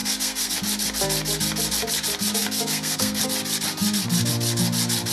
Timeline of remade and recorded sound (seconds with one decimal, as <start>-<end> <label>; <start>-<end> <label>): 0.0-0.5 remade; 0.5-2.4 recorded; 2.4-3.2 remade; 3.2-5.1 recorded